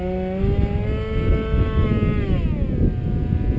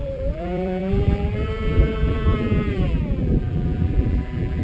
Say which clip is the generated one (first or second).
second